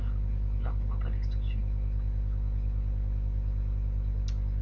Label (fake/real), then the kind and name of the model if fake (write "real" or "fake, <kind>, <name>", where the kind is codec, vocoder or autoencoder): real